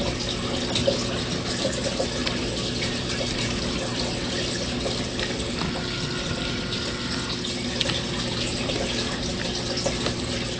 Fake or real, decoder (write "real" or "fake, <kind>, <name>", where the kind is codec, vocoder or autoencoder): real